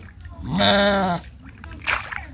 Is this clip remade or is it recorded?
recorded